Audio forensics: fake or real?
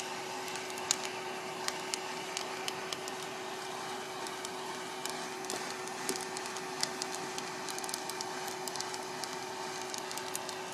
real